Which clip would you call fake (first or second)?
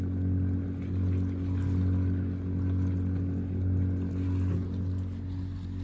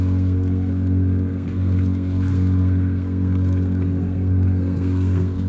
second